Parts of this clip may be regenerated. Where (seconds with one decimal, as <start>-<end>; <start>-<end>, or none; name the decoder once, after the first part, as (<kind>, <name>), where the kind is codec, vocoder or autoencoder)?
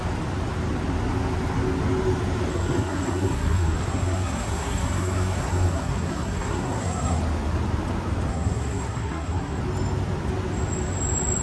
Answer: 2.5-7.2 (codec, SNAC); 8.3-9.6